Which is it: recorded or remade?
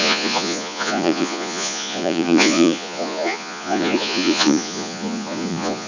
remade